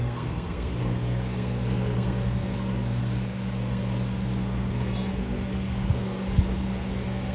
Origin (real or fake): fake